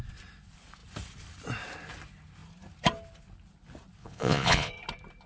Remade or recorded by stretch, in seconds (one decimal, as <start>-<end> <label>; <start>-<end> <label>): 0.0-4.0 recorded; 4.0-4.7 remade; 4.7-5.3 recorded